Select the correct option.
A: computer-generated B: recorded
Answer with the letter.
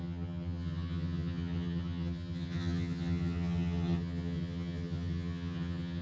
A